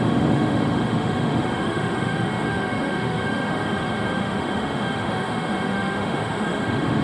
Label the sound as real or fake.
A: fake